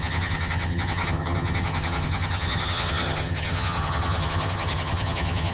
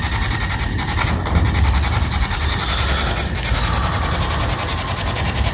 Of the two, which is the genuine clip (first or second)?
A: second